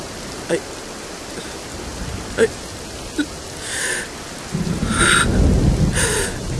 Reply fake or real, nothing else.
real